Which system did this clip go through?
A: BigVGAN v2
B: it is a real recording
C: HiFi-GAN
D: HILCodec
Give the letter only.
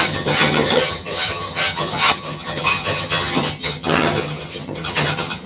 C